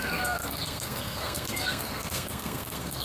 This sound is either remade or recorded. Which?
remade